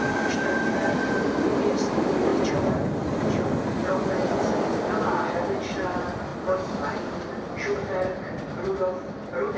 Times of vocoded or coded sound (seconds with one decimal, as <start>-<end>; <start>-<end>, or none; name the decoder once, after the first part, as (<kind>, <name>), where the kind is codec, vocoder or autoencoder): 3.8-4.4 (vocoder, Vocos)